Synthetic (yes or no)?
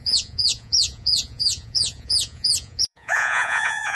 yes